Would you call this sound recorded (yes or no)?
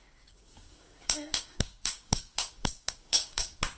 no